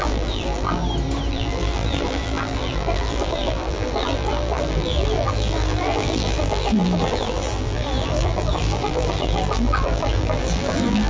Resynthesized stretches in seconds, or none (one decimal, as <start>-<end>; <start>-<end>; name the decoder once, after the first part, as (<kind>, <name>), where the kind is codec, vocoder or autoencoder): 0.0-0.8 (vocoder, BigVGAN v2); 1.3-11.1